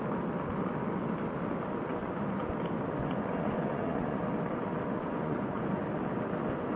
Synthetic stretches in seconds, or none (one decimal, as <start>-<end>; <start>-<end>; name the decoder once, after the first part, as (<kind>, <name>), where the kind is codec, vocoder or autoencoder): 1.9-2.5 (vocoder, Vocos); 3.0-4.2; 5.0-5.8